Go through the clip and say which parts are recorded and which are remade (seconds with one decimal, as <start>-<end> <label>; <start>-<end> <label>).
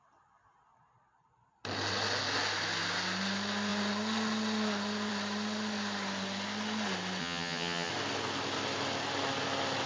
0.0-7.2 recorded; 7.2-7.9 remade; 7.9-9.9 recorded